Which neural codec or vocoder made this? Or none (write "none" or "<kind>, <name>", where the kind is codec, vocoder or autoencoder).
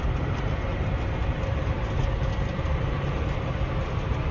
vocoder, BigVGAN v2